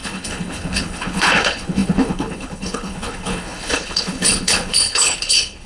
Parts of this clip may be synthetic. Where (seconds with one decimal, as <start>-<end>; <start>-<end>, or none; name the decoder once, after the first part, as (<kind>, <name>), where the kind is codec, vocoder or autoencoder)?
0.0-5.7 (codec, HILCodec)